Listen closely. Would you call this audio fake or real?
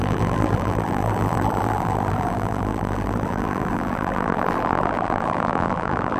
fake